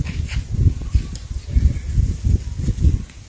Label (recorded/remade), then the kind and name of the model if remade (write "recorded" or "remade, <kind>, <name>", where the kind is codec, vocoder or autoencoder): recorded